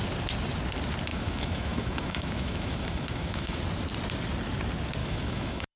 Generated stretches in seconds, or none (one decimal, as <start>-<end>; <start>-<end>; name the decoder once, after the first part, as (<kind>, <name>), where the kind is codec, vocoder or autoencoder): 1.1-3.6 (autoencoder, DAC-VAE); 5.0-5.8